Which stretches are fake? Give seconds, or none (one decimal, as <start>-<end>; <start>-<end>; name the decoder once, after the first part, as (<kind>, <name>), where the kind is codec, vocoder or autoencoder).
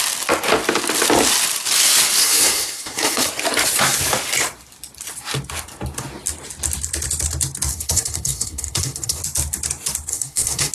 2.2-3.3 (codec, SNAC); 7.7-9.2; 10.1-10.7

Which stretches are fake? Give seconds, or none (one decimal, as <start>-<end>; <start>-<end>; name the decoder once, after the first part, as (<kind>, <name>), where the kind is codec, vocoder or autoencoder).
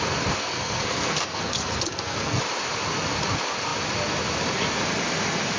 0.4-2.4 (codec, SNAC)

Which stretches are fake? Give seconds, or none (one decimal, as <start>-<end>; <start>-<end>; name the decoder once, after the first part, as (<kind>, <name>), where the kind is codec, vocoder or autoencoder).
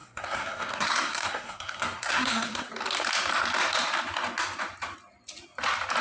0.0-2.7 (codec, SNAC)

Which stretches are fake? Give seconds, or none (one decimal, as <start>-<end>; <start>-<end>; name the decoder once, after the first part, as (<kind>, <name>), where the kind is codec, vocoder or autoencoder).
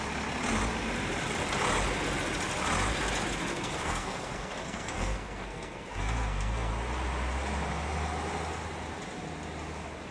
3.5-6.7 (codec, SNAC)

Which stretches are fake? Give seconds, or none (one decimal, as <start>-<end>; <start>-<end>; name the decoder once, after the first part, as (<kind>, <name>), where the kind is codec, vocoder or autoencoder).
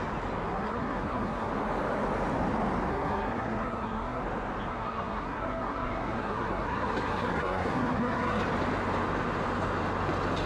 0.5-1.5 (codec, SNAC); 2.9-4.2; 4.7-8.4